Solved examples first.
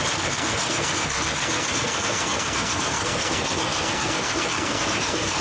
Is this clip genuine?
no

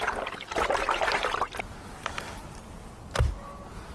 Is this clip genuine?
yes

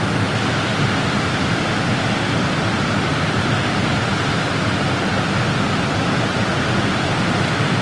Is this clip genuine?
yes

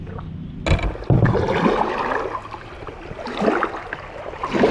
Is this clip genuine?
yes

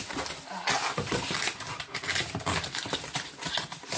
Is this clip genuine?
yes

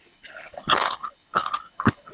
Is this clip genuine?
no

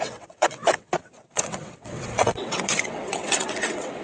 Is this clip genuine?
no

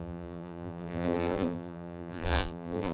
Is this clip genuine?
no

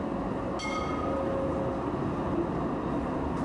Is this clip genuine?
yes